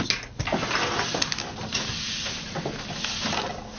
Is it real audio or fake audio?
real